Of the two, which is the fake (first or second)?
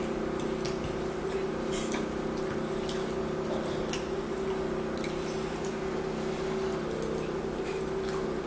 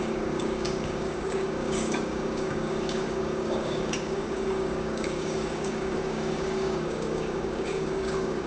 second